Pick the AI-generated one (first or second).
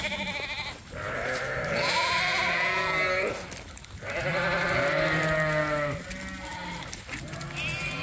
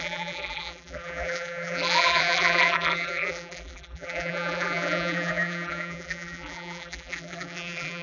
second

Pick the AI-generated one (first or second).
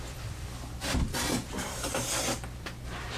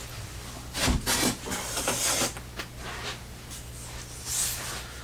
first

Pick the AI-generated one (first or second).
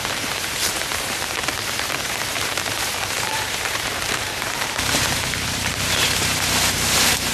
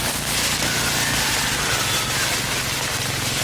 first